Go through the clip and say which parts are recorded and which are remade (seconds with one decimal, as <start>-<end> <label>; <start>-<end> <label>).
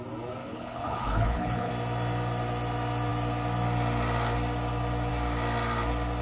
0.0-0.4 recorded; 0.4-1.7 remade; 1.7-6.2 recorded